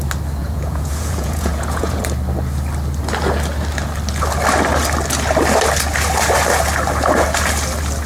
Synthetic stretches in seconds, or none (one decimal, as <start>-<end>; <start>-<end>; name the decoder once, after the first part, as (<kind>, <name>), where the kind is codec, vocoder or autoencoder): 0.4-2.0 (vocoder, Vocos)